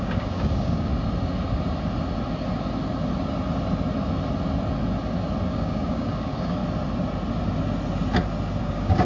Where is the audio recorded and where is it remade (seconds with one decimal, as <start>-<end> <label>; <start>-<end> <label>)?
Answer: 0.0-0.9 remade; 0.9-5.5 recorded; 5.5-6.6 remade; 6.6-8.6 recorded; 8.6-9.1 remade